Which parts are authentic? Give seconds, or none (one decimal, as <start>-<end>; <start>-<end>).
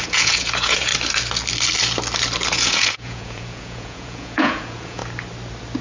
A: 0.9-2.5; 5.0-5.8